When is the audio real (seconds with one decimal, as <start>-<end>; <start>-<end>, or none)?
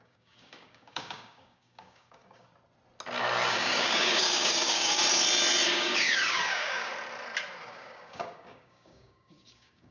2.5-3.5; 5.0-5.8; 6.9-7.6